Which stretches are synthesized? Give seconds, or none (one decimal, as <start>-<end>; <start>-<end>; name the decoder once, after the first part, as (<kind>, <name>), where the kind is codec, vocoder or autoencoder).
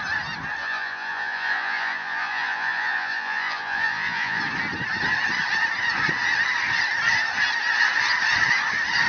0.6-4.4 (vocoder, Vocos)